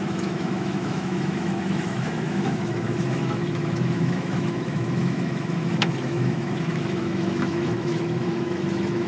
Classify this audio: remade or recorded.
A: remade